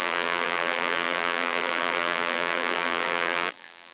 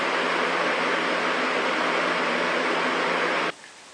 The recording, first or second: second